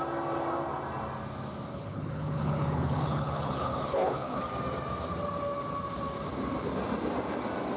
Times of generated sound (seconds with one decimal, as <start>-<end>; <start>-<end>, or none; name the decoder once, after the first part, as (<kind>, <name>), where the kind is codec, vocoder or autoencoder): 1.7-4.4 (codec, HILCodec)